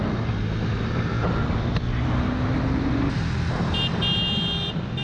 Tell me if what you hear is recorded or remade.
recorded